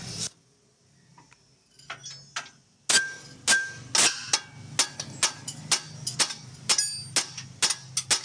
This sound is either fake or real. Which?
real